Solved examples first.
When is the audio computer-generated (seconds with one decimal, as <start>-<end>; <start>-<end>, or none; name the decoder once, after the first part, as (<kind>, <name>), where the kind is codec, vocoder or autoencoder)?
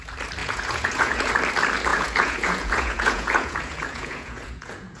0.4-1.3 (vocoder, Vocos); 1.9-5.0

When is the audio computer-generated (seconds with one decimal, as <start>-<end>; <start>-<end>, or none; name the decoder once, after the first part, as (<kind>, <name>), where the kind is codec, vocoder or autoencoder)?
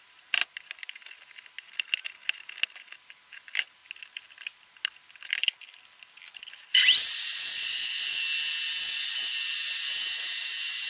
none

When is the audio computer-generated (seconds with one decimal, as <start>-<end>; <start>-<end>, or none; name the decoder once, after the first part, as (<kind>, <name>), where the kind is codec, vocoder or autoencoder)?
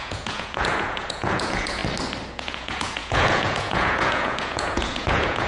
0.0-1.8 (vocoder, Vocos); 2.3-5.5